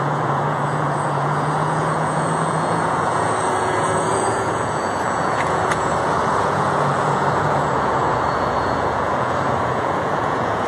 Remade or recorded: remade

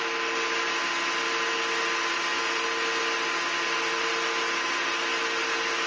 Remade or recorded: recorded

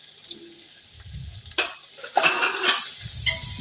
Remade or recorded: recorded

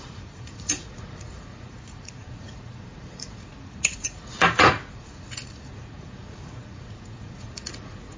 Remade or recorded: remade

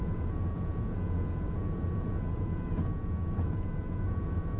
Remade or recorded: remade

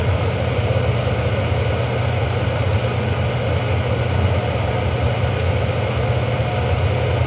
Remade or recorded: recorded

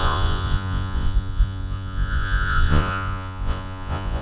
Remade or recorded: remade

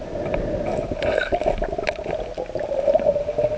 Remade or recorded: recorded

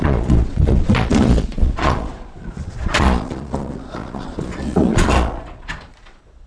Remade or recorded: remade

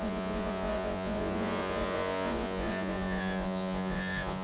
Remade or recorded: remade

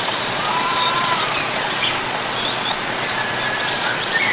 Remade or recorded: remade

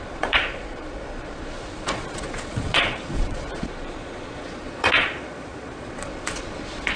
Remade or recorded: remade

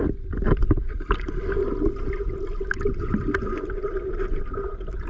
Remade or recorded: recorded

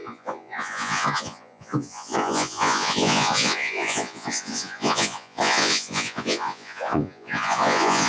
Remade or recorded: remade